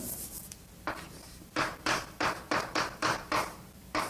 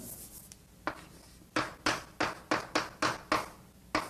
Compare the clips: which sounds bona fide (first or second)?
second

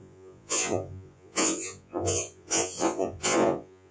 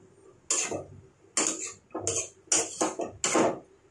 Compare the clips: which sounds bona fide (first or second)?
second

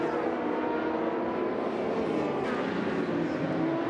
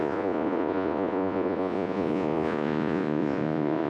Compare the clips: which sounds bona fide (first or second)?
first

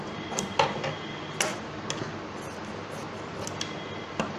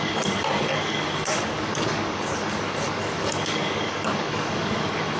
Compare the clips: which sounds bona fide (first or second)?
first